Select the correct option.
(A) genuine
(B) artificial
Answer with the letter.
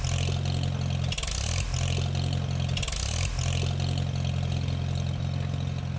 A